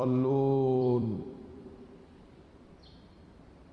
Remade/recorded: remade